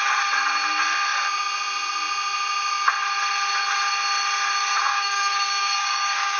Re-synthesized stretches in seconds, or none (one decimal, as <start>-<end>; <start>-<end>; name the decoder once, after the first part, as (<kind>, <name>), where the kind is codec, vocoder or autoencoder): 4.9-6.4 (codec, DAC)